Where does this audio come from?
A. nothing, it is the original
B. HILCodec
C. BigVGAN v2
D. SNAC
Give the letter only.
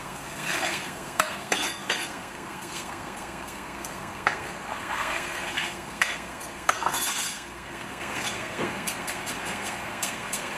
D